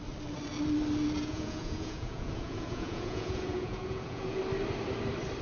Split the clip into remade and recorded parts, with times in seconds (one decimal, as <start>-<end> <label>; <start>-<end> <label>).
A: 0.0-1.2 recorded; 1.2-4.4 remade; 4.4-5.4 recorded